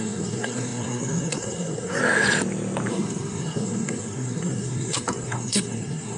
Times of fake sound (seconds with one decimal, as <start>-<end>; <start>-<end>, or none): 0.0-2.0; 2.9-6.2